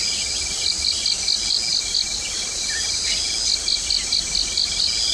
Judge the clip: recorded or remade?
recorded